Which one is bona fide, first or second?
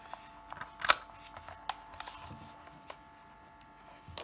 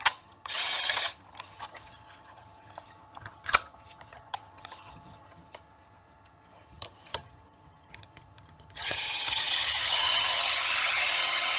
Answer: first